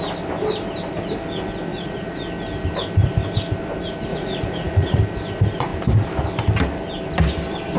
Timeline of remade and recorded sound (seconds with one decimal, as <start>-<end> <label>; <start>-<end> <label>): 0.0-1.7 recorded; 1.7-2.2 remade; 2.2-4.1 recorded; 4.1-5.0 remade; 5.0-7.8 recorded